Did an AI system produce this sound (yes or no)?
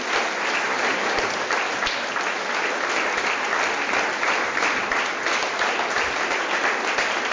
no